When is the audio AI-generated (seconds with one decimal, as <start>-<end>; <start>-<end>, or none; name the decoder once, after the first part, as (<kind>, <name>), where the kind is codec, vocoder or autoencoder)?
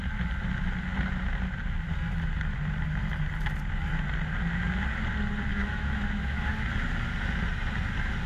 5.5-6.5 (autoencoder, DAC-VAE)